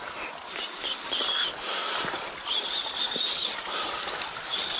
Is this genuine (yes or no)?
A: yes